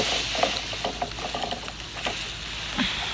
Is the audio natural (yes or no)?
yes